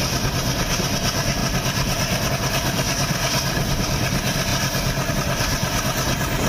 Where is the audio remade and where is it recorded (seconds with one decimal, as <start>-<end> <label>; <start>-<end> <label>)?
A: 0.0-6.5 recorded